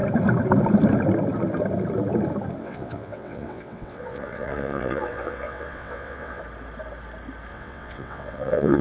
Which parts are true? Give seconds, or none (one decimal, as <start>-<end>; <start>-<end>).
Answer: 0.0-2.6; 6.4-7.5